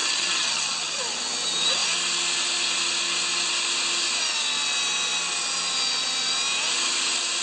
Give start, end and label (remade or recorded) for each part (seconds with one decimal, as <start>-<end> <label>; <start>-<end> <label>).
0.0-1.0 remade; 1.0-7.4 recorded